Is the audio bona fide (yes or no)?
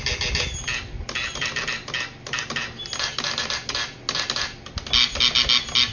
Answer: yes